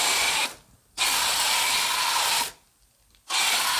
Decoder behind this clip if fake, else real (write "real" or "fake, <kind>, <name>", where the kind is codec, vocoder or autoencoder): real